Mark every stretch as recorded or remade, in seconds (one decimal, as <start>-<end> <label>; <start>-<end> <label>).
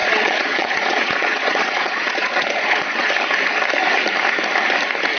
0.0-3.1 remade; 3.1-5.2 recorded